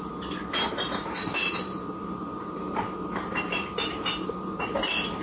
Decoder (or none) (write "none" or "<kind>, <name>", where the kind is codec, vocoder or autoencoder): vocoder, BigVGAN v2